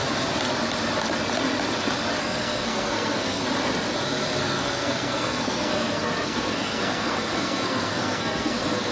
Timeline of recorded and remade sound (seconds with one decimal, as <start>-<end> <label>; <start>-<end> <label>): 0.0-2.2 recorded; 2.2-3.4 remade; 3.4-4.4 recorded; 4.4-8.9 remade